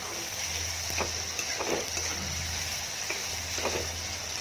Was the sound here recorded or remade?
recorded